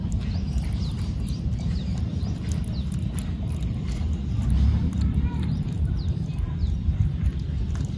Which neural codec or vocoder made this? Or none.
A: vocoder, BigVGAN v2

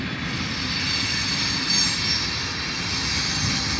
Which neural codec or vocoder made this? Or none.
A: none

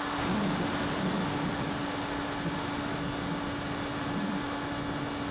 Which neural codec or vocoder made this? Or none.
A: none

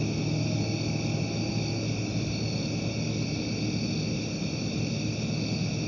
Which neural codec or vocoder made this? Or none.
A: none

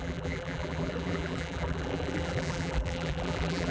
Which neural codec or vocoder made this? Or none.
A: vocoder, BigVGAN v2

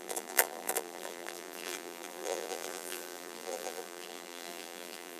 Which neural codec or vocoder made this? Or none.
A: vocoder, BigVGAN v2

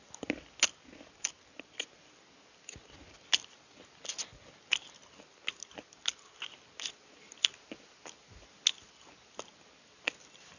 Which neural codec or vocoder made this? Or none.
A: none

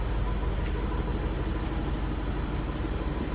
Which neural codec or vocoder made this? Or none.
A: none